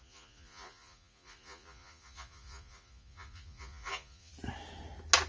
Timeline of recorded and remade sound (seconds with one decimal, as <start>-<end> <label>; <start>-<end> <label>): 0.0-4.3 remade; 4.3-5.3 recorded